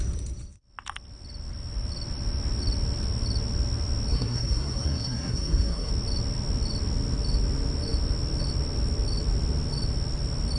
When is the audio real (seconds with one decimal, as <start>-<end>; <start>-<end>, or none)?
0.0-4.1; 5.9-10.6